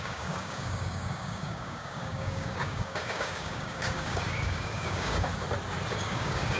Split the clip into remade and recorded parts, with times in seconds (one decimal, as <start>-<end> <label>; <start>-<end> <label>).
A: 0.0-5.3 remade; 5.3-5.9 recorded; 5.9-6.6 remade